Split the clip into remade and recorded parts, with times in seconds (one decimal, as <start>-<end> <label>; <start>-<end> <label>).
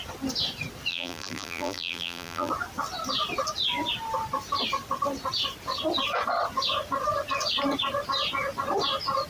0.0-0.9 recorded; 0.9-2.5 remade; 2.5-9.3 recorded